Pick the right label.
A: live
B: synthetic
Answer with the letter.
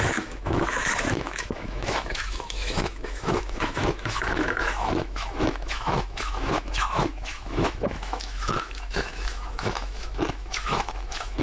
B